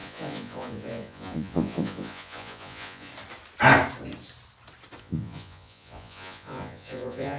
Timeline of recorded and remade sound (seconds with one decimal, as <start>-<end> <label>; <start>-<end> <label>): 0.0-3.1 remade; 3.1-5.0 recorded; 5.0-7.4 remade